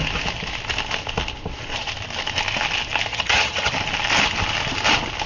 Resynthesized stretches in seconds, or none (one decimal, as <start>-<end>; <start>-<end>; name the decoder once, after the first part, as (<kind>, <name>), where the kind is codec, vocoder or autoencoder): 3.1-3.7 (vocoder, HiFi-GAN)